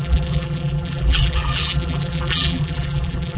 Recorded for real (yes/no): no